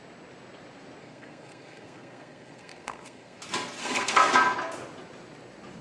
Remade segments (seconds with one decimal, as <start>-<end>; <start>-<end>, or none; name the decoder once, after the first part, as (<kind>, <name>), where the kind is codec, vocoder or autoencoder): 1.0-3.4 (codec, SNAC); 3.8-4.3